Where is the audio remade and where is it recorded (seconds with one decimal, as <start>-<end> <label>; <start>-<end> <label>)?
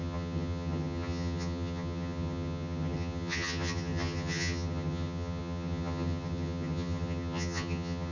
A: 0.0-8.1 remade